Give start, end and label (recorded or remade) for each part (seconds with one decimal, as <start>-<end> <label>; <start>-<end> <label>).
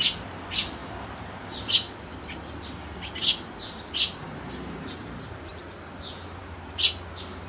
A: 0.0-0.8 recorded; 0.8-1.9 remade; 1.9-4.2 recorded; 4.2-5.6 remade; 5.6-7.5 recorded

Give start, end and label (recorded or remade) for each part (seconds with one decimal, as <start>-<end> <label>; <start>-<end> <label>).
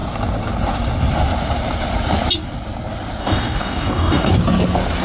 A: 0.0-3.2 recorded; 3.2-4.3 remade; 4.3-5.0 recorded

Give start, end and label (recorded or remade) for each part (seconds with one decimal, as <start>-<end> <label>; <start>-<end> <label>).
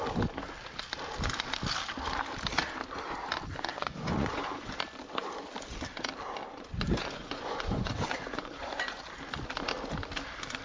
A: 0.0-3.7 recorded; 3.7-4.7 remade; 4.7-6.4 recorded; 6.4-9.0 remade; 9.0-10.6 recorded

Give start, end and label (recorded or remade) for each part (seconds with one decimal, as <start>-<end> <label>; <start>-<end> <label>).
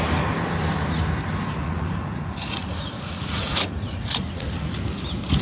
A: 0.0-1.6 recorded; 1.6-4.8 remade; 4.8-5.4 recorded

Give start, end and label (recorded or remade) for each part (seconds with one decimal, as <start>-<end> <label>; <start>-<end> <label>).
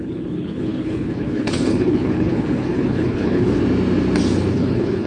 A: 0.0-3.6 remade; 3.6-4.5 recorded; 4.5-5.1 remade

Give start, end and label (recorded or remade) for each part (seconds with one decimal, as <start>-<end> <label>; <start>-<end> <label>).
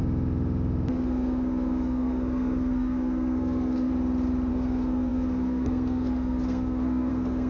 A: 0.0-0.9 recorded; 0.9-3.9 remade; 3.9-4.5 recorded; 4.5-7.5 remade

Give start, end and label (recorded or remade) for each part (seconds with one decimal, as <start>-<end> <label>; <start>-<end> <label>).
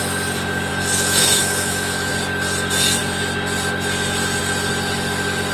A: 0.0-0.7 recorded; 0.7-2.1 remade; 2.1-5.5 recorded